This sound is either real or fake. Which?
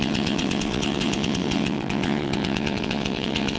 fake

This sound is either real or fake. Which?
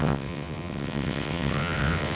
fake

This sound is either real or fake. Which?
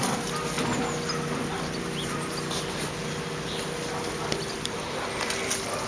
real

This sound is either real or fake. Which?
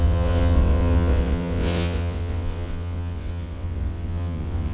fake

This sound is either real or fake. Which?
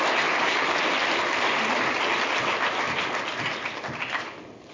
real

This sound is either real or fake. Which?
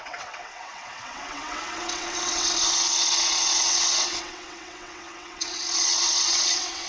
fake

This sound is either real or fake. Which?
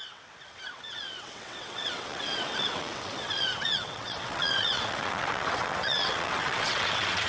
fake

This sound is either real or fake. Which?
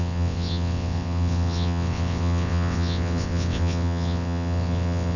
fake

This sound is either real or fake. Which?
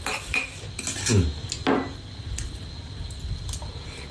real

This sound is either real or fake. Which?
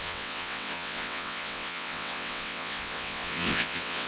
fake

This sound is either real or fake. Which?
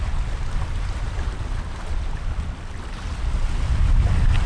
real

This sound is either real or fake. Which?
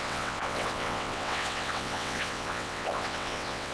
fake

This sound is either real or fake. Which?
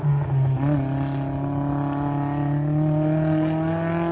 real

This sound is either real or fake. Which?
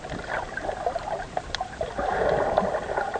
real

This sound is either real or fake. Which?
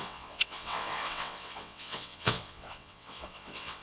fake